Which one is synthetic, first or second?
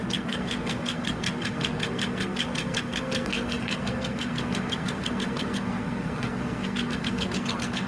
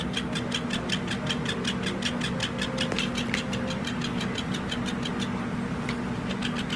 first